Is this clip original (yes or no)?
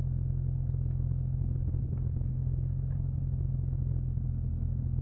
yes